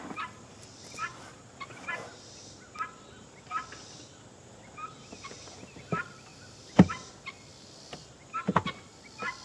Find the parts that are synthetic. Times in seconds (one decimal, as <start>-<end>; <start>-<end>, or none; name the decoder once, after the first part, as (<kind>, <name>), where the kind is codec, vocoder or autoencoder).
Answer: 6.3-7.1 (vocoder, BigVGAN v2)